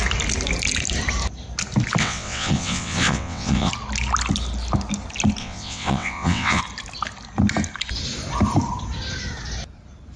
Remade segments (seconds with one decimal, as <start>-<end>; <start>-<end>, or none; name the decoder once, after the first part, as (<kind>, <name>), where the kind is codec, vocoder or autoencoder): 2.0-3.7 (vocoder, WaveNeXt); 5.4-6.6

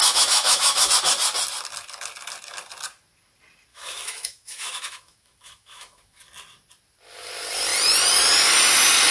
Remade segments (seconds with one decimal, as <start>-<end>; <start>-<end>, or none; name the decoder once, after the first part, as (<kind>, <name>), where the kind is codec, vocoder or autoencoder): 0.0-0.9 (autoencoder, DAC-VAE); 3.7-6.2

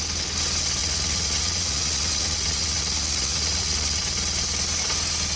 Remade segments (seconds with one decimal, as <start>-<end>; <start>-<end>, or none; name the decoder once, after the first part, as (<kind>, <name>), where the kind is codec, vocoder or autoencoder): 0.8-4.0 (vocoder, Vocos)

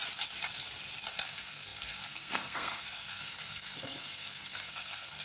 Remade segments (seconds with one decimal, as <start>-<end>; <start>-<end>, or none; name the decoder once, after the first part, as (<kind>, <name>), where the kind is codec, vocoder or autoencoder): 1.1-5.2 (codec, SNAC)